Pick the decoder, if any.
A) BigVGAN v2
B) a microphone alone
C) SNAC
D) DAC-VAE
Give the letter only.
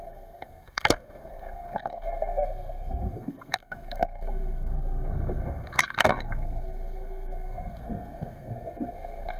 C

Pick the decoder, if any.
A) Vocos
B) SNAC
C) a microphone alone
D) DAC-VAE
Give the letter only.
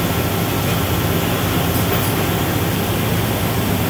C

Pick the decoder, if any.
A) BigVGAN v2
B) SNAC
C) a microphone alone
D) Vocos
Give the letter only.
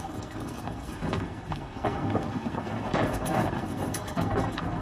B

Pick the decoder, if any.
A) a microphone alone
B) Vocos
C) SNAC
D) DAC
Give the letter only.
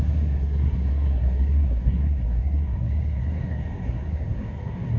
C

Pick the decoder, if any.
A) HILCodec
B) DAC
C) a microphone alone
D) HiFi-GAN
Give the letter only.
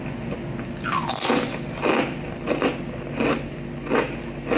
C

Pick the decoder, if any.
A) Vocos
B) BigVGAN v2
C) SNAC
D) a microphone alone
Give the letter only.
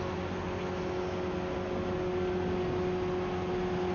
D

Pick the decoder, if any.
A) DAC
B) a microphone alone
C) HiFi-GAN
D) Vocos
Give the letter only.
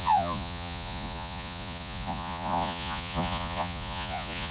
D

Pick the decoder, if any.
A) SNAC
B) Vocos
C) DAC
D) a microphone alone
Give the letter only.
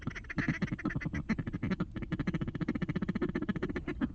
D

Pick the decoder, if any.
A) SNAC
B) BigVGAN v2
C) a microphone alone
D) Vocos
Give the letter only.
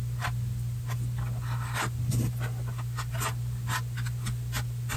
C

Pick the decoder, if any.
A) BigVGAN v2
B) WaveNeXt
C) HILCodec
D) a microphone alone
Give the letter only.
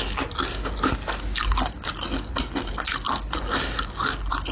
D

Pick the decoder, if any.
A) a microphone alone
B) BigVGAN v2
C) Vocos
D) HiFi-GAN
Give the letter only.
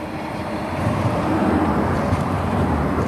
B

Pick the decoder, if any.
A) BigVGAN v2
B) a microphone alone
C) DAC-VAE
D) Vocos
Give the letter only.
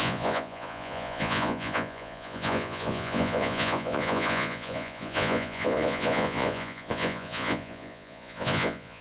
D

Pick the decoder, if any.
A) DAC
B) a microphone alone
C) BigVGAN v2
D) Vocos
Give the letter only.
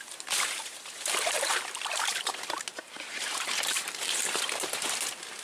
C